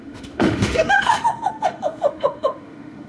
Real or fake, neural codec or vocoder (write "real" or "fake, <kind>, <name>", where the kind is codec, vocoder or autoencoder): fake, autoencoder, DAC-VAE